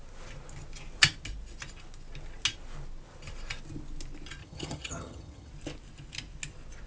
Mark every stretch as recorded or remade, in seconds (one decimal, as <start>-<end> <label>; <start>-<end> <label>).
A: 0.0-4.4 recorded; 4.4-5.5 remade; 5.5-6.9 recorded